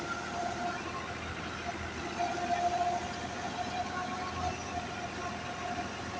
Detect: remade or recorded recorded